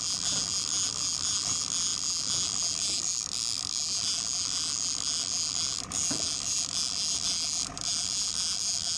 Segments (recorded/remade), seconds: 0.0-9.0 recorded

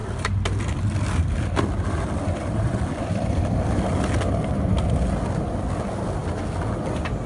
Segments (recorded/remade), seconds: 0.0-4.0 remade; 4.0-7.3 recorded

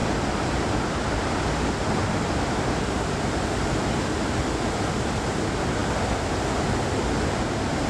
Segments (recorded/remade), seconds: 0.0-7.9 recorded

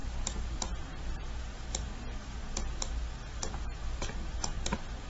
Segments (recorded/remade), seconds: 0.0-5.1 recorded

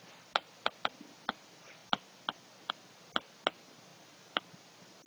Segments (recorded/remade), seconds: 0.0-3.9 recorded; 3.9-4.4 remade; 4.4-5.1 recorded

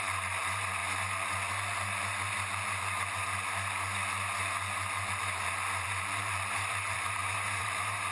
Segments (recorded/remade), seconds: 0.0-0.8 remade; 0.8-5.1 recorded; 5.1-8.1 remade

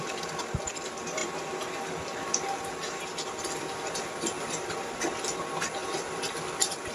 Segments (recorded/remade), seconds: 0.0-6.9 recorded

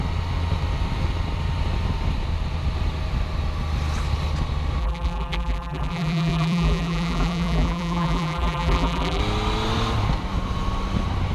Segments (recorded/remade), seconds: 0.0-4.8 recorded; 4.8-9.2 remade; 9.2-11.3 recorded